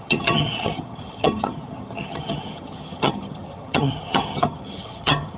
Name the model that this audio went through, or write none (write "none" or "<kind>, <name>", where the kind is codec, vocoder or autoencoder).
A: vocoder, HiFi-GAN